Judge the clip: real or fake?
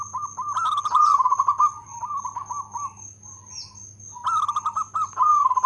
real